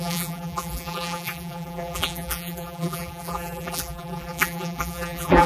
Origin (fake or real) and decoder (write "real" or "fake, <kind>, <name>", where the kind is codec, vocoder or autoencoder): fake, vocoder, BigVGAN v2